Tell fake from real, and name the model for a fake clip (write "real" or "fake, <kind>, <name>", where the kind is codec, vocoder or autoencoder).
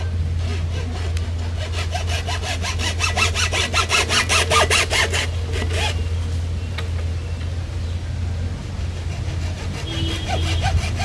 real